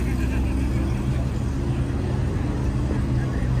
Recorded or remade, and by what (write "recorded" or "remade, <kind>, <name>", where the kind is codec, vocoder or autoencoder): recorded